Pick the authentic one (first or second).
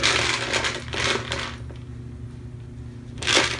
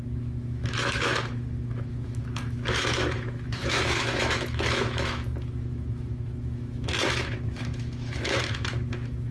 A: first